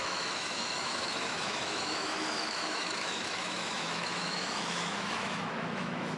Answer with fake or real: fake